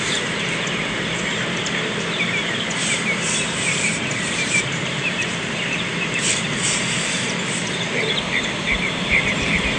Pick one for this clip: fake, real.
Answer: fake